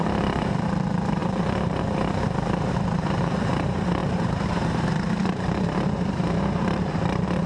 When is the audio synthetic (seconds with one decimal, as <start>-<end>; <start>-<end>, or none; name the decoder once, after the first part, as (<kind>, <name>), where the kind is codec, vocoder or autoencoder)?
0.0-7.5 (vocoder, BigVGAN v2)